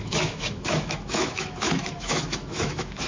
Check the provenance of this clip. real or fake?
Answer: fake